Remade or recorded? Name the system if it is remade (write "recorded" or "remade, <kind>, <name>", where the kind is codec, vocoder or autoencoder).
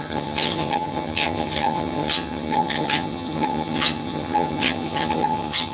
remade, vocoder, HiFi-GAN